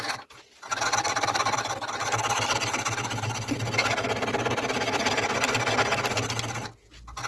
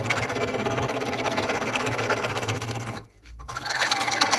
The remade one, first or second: second